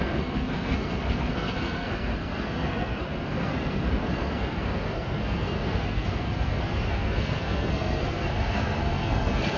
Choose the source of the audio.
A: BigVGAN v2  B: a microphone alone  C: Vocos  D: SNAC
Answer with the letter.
D